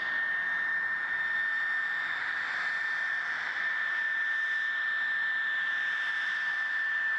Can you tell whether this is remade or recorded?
recorded